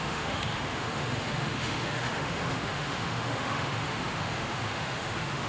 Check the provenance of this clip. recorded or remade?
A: remade